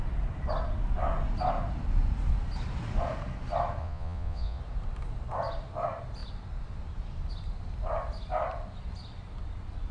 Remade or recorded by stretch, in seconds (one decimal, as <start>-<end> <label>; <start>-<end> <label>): 0.0-3.8 recorded; 3.8-4.6 remade; 4.6-9.9 recorded